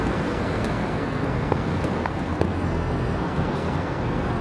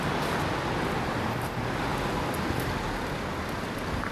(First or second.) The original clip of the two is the second